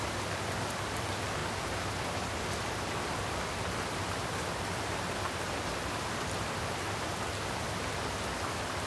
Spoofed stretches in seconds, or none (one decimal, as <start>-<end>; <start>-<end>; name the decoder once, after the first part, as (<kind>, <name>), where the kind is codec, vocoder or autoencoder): none